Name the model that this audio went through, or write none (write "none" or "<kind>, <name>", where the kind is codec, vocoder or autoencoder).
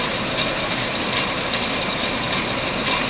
none